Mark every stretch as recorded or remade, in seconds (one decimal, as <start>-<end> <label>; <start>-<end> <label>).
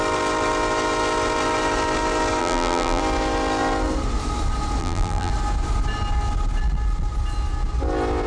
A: 0.0-2.4 recorded; 2.4-3.0 remade; 3.0-4.8 recorded; 4.8-5.3 remade; 5.3-8.3 recorded